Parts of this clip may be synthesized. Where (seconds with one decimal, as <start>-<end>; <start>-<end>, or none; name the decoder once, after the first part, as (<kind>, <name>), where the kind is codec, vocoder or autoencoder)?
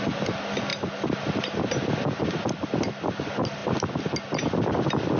none